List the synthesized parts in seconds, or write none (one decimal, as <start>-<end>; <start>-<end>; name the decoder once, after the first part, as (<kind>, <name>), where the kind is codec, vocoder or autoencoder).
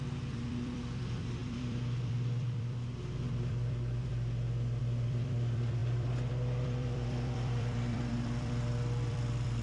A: 0.0-4.1 (vocoder, BigVGAN v2); 4.8-9.6